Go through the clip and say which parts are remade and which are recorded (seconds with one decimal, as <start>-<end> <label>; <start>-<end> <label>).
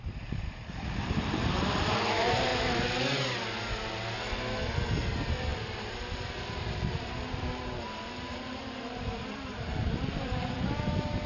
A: 0.0-2.5 remade; 2.5-5.1 recorded; 5.1-11.3 remade